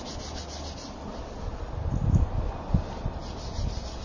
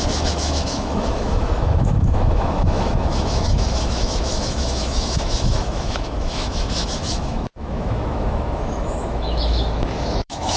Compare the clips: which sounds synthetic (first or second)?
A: second